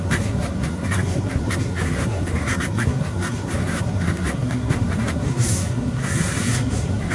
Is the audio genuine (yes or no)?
no